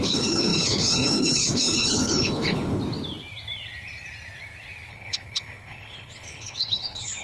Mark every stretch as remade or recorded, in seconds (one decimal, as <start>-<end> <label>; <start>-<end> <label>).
0.0-2.8 remade; 2.8-4.9 recorded; 4.9-7.2 remade